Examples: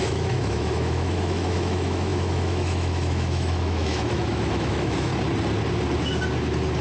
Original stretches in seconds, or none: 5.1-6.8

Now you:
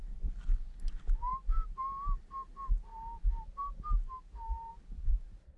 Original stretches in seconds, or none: 0.0-5.6

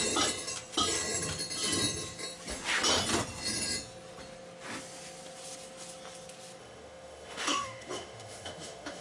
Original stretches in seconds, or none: 0.0-6.6

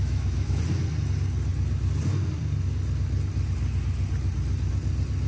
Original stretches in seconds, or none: 0.6-5.3

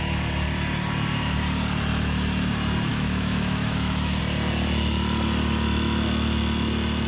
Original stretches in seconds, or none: 0.0-2.9; 4.2-7.1

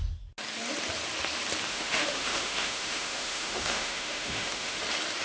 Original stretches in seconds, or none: 0.0-1.7; 4.8-5.2